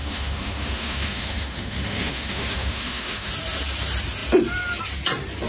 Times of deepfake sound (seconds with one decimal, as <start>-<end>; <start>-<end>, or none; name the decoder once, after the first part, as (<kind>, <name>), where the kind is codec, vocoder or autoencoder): 0.0-3.3 (autoencoder, DAC-VAE)